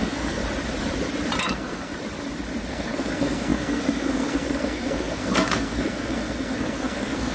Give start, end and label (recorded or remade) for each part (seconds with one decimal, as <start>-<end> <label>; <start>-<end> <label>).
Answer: 0.0-0.4 remade; 0.4-1.4 recorded; 1.4-1.9 remade; 1.9-2.7 recorded; 2.7-7.3 remade